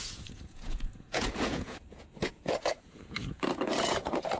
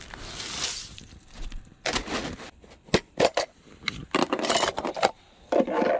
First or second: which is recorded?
second